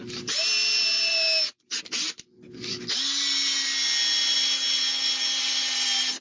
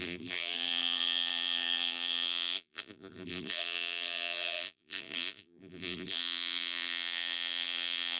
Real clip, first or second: first